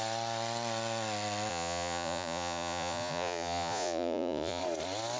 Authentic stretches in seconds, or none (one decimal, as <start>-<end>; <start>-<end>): 0.0-1.5; 4.6-5.2